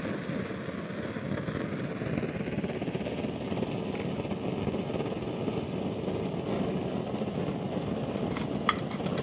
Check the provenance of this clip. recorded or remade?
recorded